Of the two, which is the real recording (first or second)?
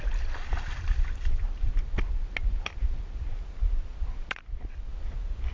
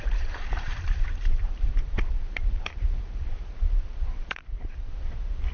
first